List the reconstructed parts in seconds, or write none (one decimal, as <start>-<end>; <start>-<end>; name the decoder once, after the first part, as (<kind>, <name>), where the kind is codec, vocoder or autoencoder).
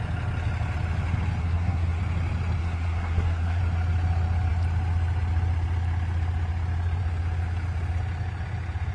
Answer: 1.4-2.0 (codec, SNAC); 2.6-3.6